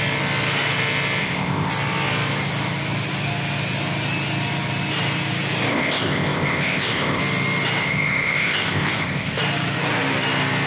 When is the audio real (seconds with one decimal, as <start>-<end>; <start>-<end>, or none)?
0.0-1.2; 1.7-5.7; 7.2-7.8; 9.4-10.7